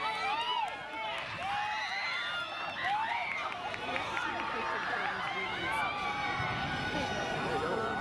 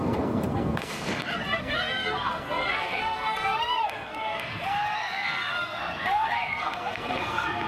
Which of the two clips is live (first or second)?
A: first